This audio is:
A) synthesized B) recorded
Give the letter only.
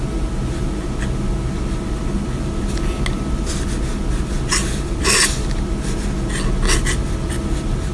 B